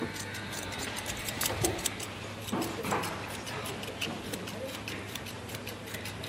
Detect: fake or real fake